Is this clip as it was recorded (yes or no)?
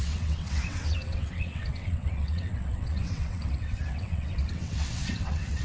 no